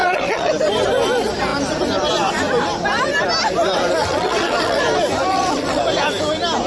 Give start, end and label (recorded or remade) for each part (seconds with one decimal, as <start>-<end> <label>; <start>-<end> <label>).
0.0-0.5 remade; 0.5-4.0 recorded; 4.0-4.8 remade; 4.8-5.3 recorded; 5.3-5.8 remade; 5.8-6.7 recorded